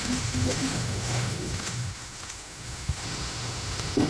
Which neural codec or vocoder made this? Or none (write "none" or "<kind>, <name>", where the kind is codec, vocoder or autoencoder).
autoencoder, DAC-VAE